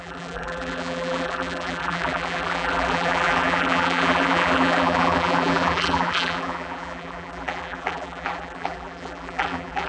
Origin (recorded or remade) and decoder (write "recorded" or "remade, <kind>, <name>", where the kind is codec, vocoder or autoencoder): remade, vocoder, BigVGAN v2